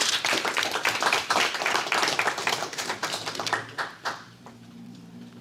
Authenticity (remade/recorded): remade